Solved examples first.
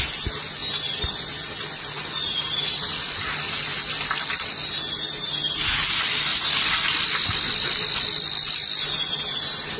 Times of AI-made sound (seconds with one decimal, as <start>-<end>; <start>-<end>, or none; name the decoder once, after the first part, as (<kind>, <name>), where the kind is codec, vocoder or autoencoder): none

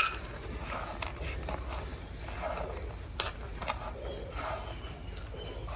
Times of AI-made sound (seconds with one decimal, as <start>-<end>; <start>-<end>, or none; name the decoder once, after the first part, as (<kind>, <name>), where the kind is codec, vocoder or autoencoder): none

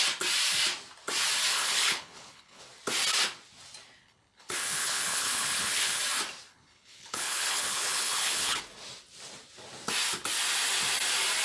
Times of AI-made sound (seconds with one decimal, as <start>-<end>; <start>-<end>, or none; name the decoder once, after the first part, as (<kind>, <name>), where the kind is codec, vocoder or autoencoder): 1.5-2.6 (codec, HILCodec); 4.0-6.0; 6.5-8.6

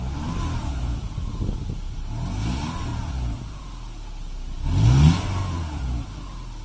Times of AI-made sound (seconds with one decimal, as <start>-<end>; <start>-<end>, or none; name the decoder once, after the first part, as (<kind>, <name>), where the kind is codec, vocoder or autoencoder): 0.7-1.3 (vocoder, Vocos); 2.9-3.6; 5.4-6.1

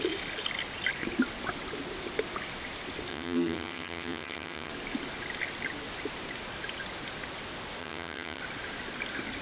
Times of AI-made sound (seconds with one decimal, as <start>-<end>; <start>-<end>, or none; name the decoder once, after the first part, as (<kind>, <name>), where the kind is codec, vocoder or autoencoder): 3.1-4.7 (vocoder, HiFi-GAN); 7.8-8.4

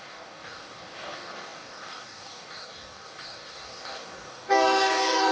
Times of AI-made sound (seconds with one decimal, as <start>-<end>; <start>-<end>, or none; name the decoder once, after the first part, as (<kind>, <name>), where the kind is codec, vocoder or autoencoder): 0.0-5.3 (codec, DAC)